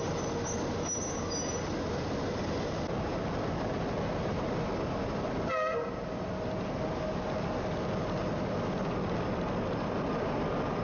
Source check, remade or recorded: recorded